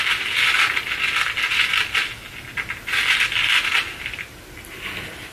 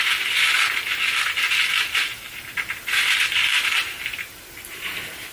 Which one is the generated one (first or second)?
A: second